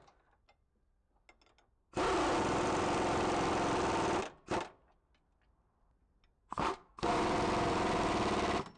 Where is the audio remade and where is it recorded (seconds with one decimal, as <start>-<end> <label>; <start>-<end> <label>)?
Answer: 0.0-6.4 recorded; 6.4-7.1 remade; 7.1-8.8 recorded